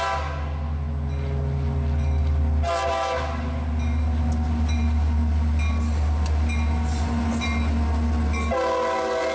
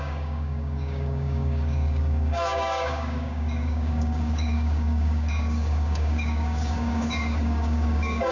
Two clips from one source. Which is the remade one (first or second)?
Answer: second